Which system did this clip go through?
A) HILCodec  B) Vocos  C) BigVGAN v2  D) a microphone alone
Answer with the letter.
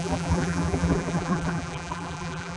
C